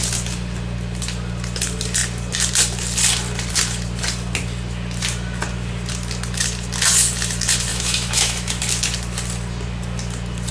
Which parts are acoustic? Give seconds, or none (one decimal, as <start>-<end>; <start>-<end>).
0.0-7.7; 8.6-10.5